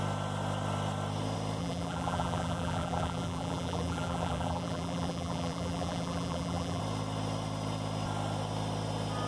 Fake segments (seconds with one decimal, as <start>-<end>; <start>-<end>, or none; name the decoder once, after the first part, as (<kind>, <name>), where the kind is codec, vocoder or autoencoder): 1.6-6.8 (vocoder, BigVGAN v2)